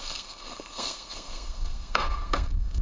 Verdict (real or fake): fake